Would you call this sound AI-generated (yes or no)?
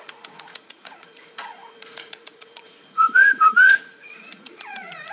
yes